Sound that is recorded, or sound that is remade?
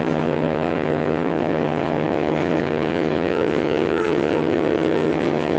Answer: remade